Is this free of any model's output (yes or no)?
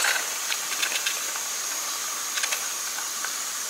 yes